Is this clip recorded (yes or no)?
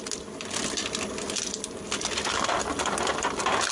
yes